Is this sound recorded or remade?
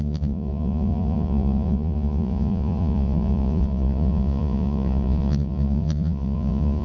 remade